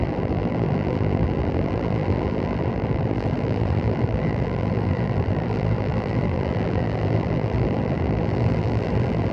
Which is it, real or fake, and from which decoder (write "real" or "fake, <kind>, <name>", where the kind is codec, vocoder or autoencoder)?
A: fake, vocoder, BigVGAN v2